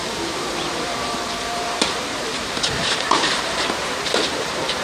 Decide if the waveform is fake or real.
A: fake